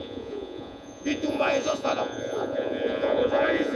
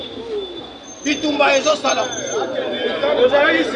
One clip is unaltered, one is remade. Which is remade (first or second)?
first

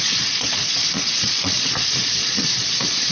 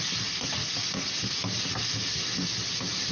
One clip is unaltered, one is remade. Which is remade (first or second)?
first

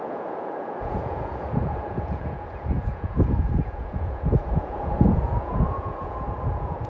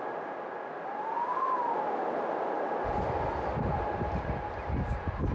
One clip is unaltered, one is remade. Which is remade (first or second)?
first